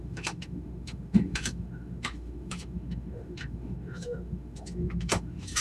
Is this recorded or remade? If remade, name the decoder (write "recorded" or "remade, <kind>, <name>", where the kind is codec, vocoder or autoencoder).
remade, autoencoder, DAC-VAE